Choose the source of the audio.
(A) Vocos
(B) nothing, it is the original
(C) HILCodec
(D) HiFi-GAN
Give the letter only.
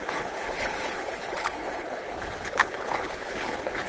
C